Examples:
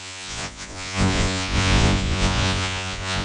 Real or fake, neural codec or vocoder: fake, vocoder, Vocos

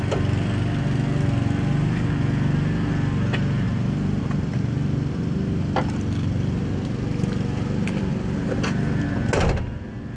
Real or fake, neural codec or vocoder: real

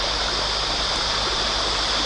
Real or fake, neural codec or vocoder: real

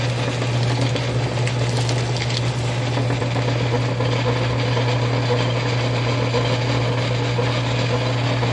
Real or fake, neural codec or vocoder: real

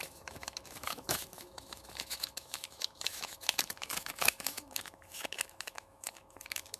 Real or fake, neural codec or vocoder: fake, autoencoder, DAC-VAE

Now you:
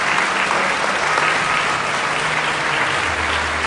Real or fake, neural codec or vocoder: real